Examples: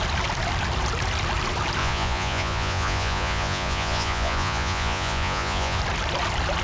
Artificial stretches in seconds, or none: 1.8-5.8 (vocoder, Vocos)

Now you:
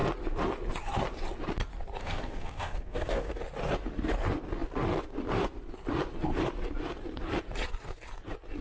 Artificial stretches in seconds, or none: 2.0-3.3 (codec, SNAC)

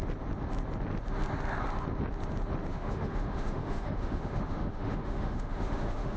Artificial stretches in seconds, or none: 2.7-6.2 (autoencoder, DAC-VAE)